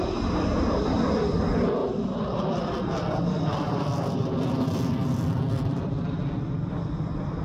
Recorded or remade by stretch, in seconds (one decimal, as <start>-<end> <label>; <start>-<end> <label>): 0.0-1.8 recorded; 1.8-6.2 remade; 6.2-7.4 recorded

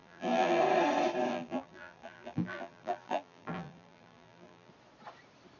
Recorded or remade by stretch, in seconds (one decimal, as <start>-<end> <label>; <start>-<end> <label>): 0.0-0.6 remade; 0.6-1.3 recorded; 1.3-4.7 remade; 4.7-5.6 recorded

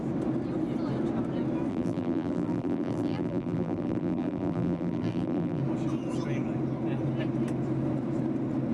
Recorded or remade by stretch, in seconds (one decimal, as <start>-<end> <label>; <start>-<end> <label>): 0.0-1.7 recorded; 1.7-5.6 remade; 5.6-8.7 recorded